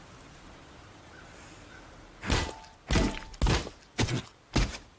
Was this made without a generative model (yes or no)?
yes